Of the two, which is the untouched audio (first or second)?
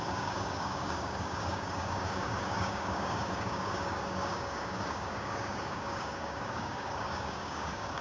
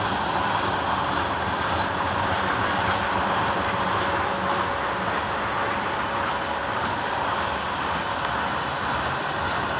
second